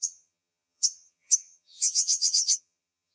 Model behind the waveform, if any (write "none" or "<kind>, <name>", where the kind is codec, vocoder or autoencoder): vocoder, HiFi-GAN